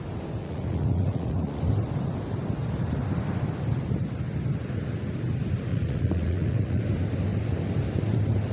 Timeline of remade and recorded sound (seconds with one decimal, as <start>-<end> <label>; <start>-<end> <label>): 0.0-0.4 recorded; 0.4-1.6 remade; 1.6-5.7 recorded; 5.7-6.8 remade; 6.8-8.5 recorded